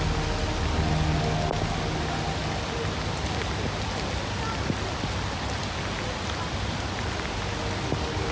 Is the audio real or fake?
real